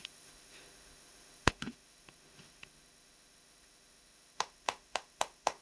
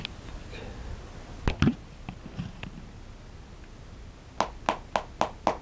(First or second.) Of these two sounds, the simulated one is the first